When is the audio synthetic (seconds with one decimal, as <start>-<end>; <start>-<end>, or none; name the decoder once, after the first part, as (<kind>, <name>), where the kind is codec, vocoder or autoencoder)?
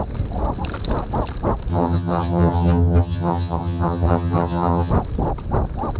1.7-4.9 (vocoder, HiFi-GAN)